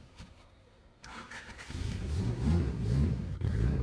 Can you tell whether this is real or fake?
fake